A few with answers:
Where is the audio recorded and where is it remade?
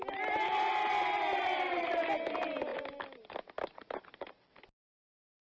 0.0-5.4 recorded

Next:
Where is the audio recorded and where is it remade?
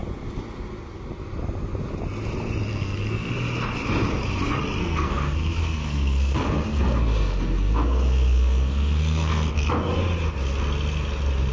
0.0-2.7 recorded; 2.7-3.3 remade; 3.3-4.8 recorded; 4.8-9.7 remade; 9.7-11.5 recorded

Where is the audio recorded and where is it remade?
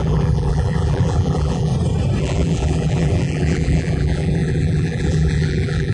0.0-1.7 remade; 1.7-2.2 recorded; 2.2-5.9 remade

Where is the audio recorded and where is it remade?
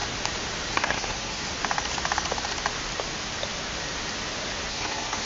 0.0-0.7 recorded; 0.7-1.5 remade; 1.5-4.7 recorded; 4.7-5.3 remade